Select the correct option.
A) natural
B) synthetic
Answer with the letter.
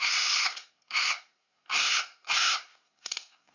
B